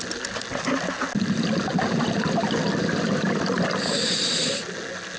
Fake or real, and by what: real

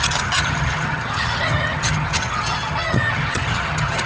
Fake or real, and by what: fake, vocoder, HiFi-GAN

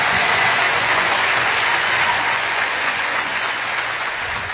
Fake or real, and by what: fake, vocoder, Vocos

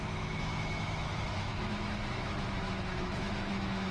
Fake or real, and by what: fake, autoencoder, DAC-VAE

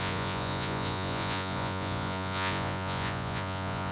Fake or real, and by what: fake, vocoder, Vocos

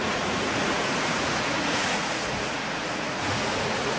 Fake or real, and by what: fake, vocoder, Vocos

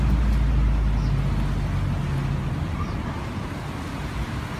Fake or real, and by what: real